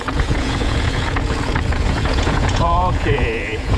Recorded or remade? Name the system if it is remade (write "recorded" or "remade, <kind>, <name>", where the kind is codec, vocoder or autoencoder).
remade, vocoder, Vocos